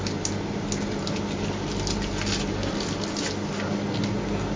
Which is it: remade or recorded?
recorded